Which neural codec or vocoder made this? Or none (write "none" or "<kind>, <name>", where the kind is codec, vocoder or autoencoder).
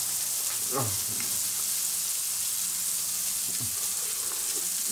none